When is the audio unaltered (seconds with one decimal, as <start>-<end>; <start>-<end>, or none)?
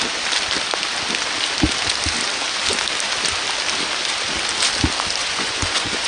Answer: 0.0-5.2